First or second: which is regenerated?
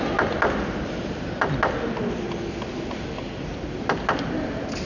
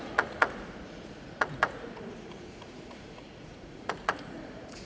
second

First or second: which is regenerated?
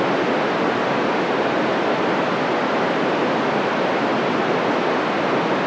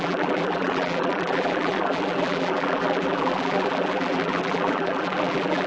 second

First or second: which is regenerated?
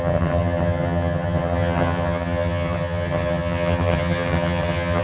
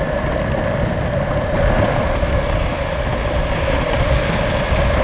first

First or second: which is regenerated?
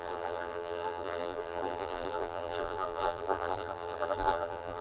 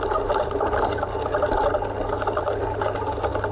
first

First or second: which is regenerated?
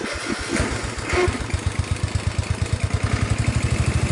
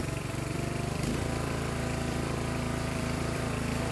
second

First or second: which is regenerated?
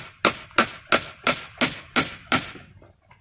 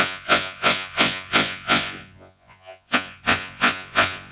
second